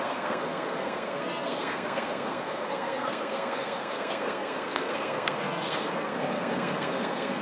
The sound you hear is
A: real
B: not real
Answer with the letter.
B